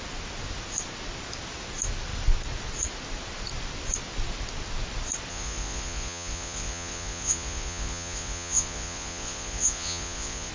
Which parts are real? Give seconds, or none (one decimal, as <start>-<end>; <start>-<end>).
0.0-5.3